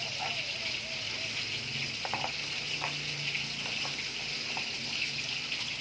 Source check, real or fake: real